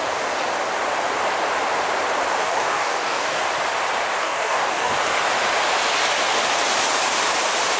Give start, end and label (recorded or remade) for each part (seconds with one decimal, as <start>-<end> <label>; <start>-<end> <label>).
0.0-2.4 recorded; 2.4-3.4 remade; 3.4-4.2 recorded; 4.2-4.9 remade; 4.9-7.8 recorded

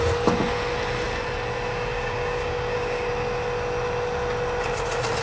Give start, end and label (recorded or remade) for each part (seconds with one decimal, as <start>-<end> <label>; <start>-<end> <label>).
0.0-1.7 recorded; 1.7-3.1 remade; 3.1-5.2 recorded

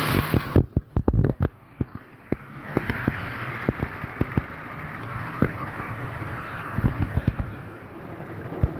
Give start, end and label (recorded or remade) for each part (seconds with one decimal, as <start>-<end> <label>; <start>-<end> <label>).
0.0-0.9 recorded; 0.9-3.5 remade; 3.5-5.0 recorded; 5.0-8.0 remade; 8.0-8.8 recorded